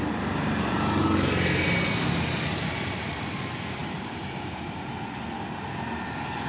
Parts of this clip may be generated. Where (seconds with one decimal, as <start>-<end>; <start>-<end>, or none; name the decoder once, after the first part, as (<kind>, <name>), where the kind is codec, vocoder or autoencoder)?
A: none